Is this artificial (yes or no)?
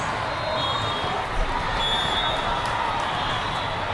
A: no